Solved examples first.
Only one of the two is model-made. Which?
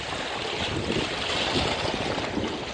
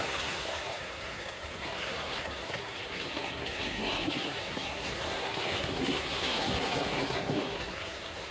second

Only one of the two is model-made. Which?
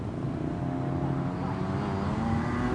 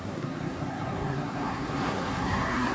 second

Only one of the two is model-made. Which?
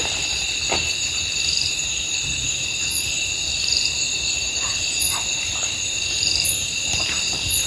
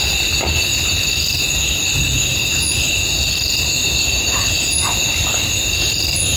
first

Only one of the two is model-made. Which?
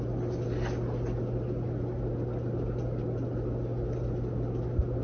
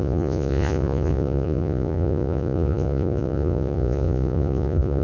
second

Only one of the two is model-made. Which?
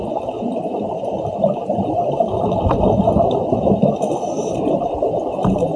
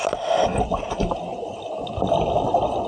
first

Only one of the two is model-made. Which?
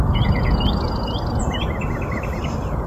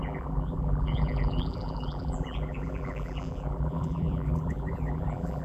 second